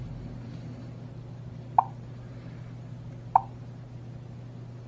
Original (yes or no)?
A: yes